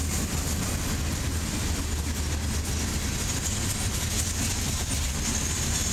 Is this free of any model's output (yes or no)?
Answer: yes